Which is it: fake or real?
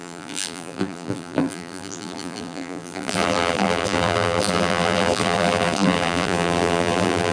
fake